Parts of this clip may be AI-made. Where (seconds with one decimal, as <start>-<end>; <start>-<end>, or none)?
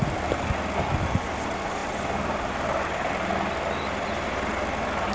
none